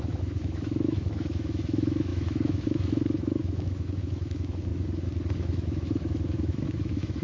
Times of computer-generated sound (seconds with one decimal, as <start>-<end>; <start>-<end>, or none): 0.0-4.7; 5.3-7.2

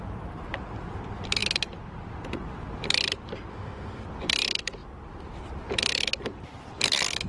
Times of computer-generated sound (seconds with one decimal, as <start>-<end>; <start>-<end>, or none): 3.5-4.0

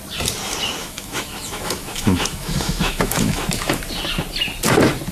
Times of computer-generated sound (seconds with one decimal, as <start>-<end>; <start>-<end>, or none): 0.8-3.8

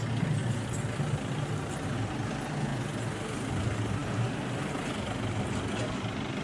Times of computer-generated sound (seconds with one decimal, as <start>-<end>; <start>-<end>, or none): none

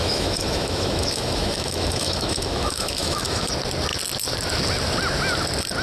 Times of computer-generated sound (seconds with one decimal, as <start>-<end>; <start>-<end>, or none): 0.0-3.5